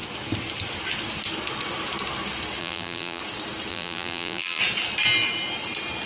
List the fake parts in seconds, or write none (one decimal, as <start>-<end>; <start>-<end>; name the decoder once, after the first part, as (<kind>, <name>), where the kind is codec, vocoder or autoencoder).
2.6-3.2 (vocoder, BigVGAN v2); 3.7-4.6